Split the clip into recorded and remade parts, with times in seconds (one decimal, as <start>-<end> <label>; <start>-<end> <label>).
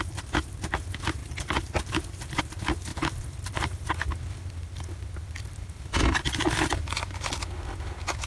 0.0-1.2 recorded; 1.2-2.4 remade; 2.4-2.9 recorded; 2.9-7.4 remade; 7.4-8.3 recorded